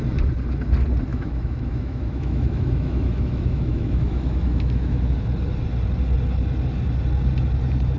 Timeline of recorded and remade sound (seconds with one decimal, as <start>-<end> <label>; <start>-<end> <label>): 0.0-1.1 recorded; 1.1-5.1 remade; 5.1-8.0 recorded